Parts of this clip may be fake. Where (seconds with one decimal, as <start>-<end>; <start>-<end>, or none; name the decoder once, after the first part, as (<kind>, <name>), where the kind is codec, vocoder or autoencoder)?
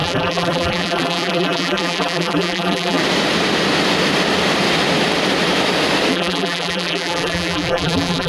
0.0-3.0 (vocoder, BigVGAN v2); 6.1-8.3